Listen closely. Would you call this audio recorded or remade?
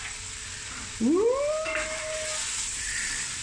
recorded